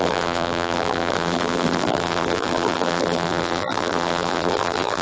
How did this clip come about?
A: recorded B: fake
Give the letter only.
B